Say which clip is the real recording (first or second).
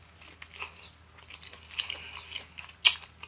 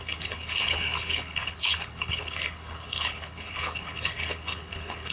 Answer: first